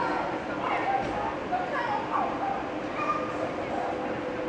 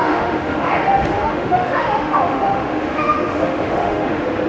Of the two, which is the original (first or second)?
first